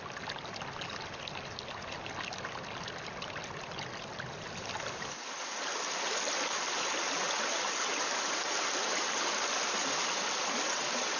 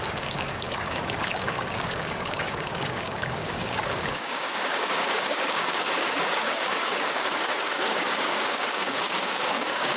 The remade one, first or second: second